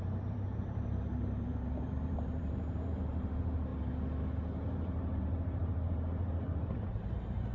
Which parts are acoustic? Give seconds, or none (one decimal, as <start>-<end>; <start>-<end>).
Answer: 3.7-4.5